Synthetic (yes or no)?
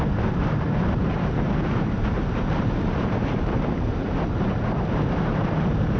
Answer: yes